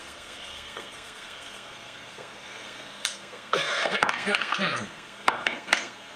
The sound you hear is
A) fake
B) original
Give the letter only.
A